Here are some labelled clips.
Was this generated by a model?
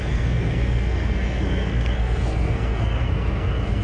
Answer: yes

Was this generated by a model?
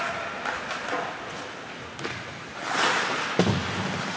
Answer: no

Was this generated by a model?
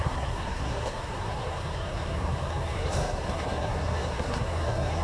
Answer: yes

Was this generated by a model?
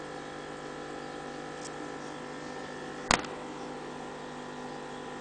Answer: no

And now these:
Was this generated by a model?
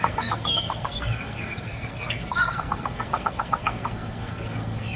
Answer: yes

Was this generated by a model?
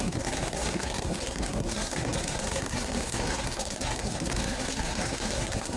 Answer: yes